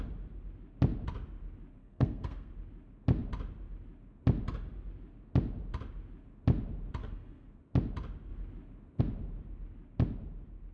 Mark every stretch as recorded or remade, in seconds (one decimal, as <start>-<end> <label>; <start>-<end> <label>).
0.0-1.8 recorded; 1.8-2.5 remade; 2.5-7.0 recorded; 7.0-7.5 remade; 7.5-10.7 recorded